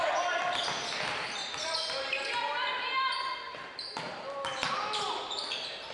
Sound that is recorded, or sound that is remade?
recorded